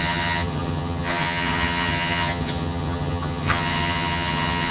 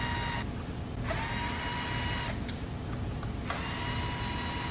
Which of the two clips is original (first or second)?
second